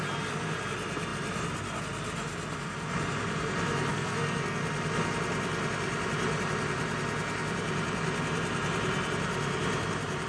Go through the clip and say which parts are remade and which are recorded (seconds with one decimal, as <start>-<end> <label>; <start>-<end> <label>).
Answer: 0.0-3.9 recorded; 3.9-4.6 remade; 4.6-10.3 recorded